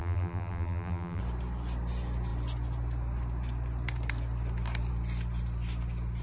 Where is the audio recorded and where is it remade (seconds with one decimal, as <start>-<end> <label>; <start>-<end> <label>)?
0.0-1.2 remade; 1.2-6.2 recorded